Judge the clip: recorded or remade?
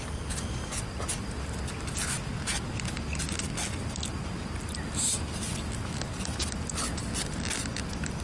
recorded